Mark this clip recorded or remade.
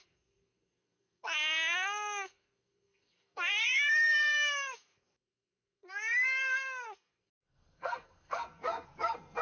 remade